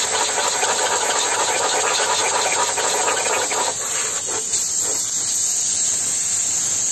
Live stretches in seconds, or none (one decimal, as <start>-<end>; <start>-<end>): 0.0-6.9